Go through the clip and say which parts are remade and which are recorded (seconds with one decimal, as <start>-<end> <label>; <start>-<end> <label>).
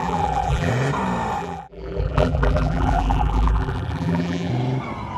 0.0-0.7 remade; 0.7-1.4 recorded; 1.4-4.5 remade; 4.5-5.2 recorded